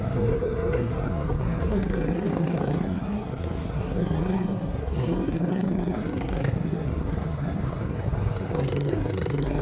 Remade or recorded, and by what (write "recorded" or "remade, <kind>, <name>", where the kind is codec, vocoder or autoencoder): remade, codec, SNAC